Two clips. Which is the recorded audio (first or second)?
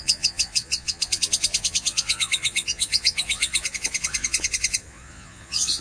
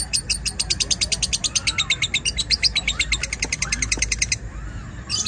second